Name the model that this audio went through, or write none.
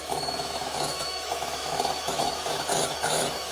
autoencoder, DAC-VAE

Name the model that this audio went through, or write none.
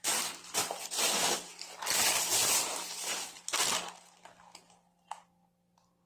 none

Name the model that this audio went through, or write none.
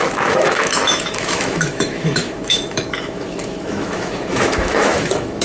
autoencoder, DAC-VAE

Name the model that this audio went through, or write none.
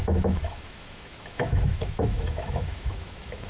autoencoder, DAC-VAE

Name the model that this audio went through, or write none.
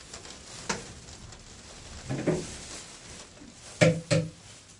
none